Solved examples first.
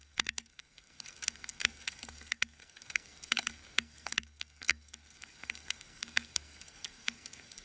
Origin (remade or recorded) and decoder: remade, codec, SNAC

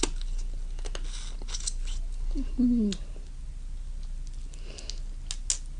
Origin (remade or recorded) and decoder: recorded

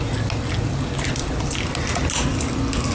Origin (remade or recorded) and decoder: recorded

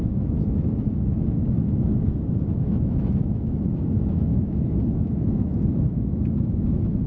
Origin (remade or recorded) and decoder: remade, autoencoder, DAC-VAE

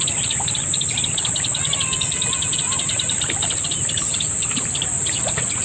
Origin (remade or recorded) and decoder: recorded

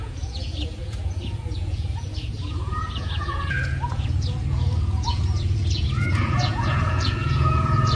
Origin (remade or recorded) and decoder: remade, vocoder, Vocos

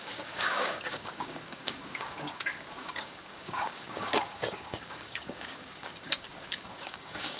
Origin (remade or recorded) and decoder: remade, codec, DAC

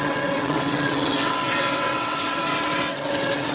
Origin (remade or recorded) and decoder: remade, vocoder, WaveNeXt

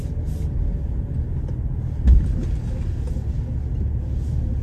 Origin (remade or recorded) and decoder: recorded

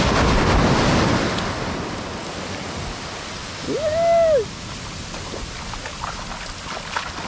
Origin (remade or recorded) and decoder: recorded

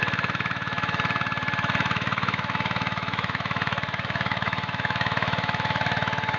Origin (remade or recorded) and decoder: remade, autoencoder, DAC-VAE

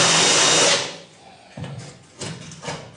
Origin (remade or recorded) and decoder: remade, vocoder, Vocos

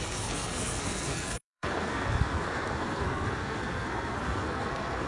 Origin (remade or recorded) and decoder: remade, codec, SNAC